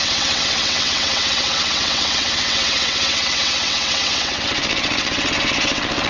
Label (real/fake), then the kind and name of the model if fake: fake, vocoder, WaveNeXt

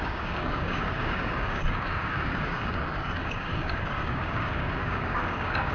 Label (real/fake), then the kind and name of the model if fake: fake, codec, DAC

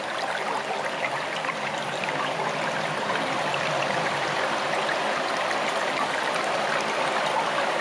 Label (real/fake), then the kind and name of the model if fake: fake, vocoder, BigVGAN v2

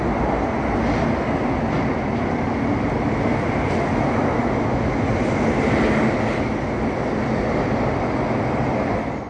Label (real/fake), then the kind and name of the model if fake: real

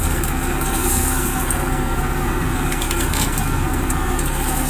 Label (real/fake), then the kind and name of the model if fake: fake, codec, SNAC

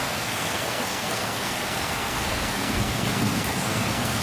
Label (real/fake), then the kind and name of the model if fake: fake, codec, SNAC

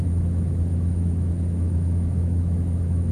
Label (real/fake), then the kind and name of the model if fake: fake, autoencoder, DAC-VAE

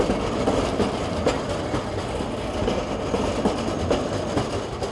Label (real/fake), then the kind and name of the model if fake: real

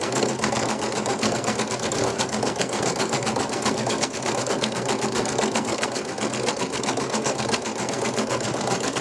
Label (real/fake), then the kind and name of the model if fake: fake, codec, SNAC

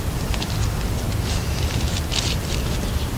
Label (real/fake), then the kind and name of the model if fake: real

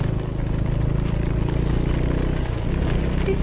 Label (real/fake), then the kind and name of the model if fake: real